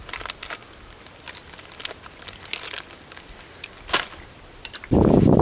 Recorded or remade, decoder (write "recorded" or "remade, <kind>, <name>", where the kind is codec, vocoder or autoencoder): recorded